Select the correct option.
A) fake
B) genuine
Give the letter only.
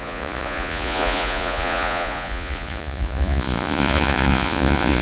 A